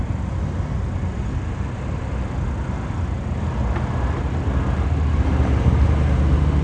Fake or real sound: real